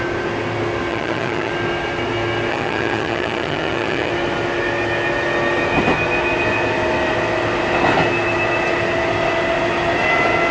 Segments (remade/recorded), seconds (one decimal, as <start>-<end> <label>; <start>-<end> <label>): 0.0-0.9 recorded; 0.9-1.5 remade; 1.5-2.5 recorded; 2.5-4.1 remade; 4.1-10.5 recorded